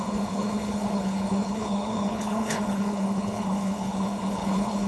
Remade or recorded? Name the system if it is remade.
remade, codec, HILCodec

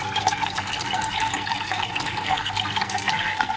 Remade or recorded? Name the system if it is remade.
remade, codec, SNAC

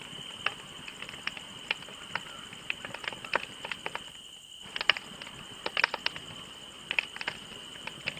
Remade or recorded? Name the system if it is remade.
remade, vocoder, BigVGAN v2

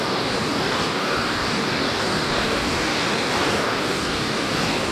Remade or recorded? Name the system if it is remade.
remade, codec, DAC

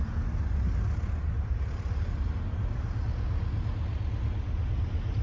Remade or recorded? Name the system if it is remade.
recorded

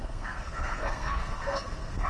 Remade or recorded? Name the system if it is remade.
remade, codec, SNAC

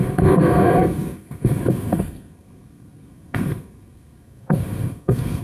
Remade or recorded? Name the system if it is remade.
remade, codec, SNAC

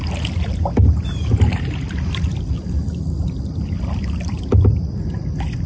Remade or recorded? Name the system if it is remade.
recorded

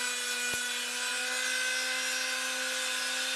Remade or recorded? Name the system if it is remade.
recorded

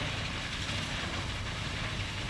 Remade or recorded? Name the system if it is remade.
recorded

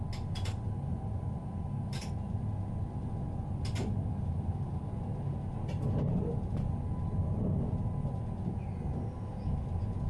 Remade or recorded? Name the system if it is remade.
recorded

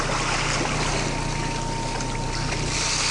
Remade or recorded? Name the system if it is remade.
recorded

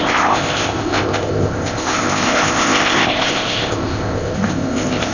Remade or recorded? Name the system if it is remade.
remade, codec, ZipCodec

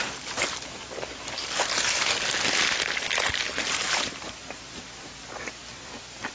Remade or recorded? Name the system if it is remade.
remade, vocoder, BigVGAN v2